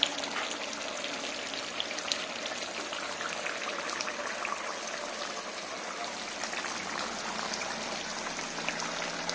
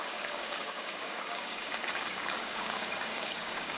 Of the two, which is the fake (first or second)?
second